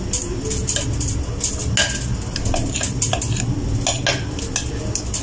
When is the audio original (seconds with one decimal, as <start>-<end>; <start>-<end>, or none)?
0.0-5.2